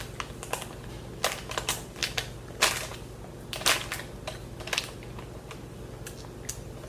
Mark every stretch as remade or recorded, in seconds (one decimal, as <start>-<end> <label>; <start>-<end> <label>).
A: 0.0-6.9 recorded